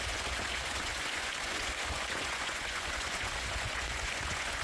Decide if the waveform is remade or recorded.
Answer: remade